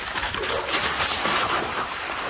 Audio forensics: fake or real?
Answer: fake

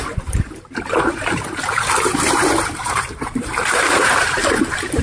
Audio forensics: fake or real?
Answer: fake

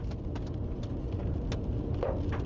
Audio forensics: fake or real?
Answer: real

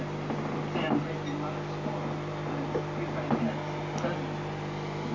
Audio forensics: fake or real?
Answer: real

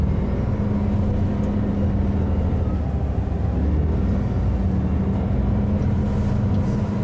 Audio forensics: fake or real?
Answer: real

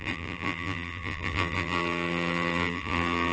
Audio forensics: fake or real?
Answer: fake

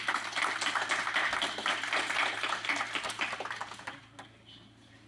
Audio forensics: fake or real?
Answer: real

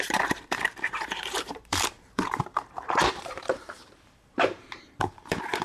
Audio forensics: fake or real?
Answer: fake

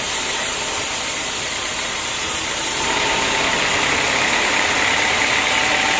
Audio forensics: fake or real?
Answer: fake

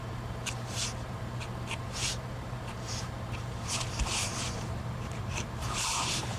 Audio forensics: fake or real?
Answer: fake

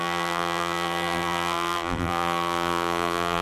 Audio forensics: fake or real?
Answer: fake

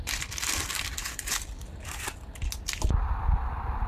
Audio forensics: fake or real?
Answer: fake